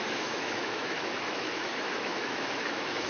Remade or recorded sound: remade